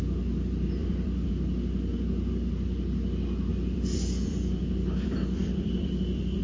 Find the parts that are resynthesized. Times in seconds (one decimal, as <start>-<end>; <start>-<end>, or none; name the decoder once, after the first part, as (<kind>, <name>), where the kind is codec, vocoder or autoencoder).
0.8-1.3 (vocoder, BigVGAN v2); 3.5-6.4